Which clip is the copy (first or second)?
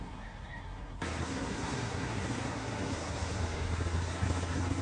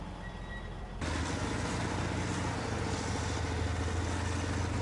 first